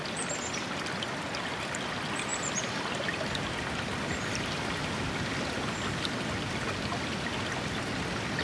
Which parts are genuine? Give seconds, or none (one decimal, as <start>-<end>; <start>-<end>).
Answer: 0.0-8.4